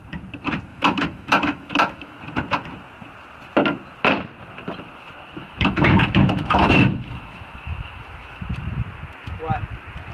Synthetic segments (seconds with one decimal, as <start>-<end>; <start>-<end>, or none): 0.7-2.2; 5.4-8.4